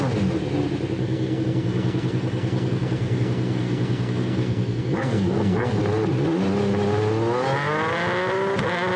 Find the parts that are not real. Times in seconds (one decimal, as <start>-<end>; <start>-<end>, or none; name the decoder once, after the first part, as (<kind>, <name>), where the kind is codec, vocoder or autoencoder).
1.0-5.8 (codec, SNAC)

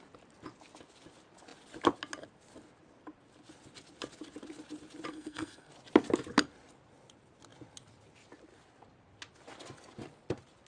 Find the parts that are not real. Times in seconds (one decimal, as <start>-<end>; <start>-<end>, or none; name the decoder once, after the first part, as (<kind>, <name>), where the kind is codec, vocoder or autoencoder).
5.1-5.7 (codec, SNAC)

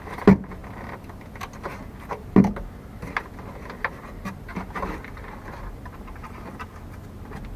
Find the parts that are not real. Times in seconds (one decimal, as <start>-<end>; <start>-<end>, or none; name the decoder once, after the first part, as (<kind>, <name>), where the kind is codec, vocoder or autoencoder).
none

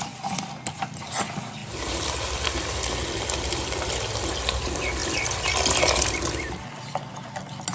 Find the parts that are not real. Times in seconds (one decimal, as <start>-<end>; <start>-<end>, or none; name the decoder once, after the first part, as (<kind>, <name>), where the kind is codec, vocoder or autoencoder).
1.6-3.8 (vocoder, BigVGAN v2); 5.0-5.5

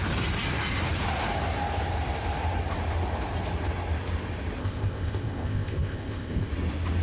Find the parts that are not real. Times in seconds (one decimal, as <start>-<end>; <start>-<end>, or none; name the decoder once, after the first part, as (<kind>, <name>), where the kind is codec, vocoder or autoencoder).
4.6-6.5 (codec, ZipCodec)

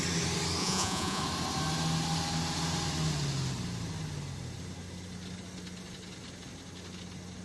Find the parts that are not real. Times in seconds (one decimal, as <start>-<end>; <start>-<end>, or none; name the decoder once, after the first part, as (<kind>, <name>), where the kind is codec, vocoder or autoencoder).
0.6-1.2 (vocoder, Vocos)

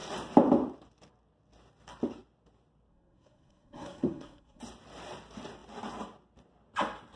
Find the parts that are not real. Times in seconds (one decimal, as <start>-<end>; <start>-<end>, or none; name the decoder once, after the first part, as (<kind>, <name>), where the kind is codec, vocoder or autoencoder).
2.9-4.6 (codec, SNAC)

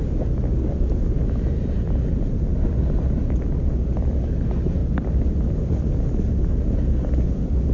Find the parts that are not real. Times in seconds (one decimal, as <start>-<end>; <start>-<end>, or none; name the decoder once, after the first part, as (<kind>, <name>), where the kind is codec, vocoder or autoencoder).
4.8-5.9 (vocoder, BigVGAN v2)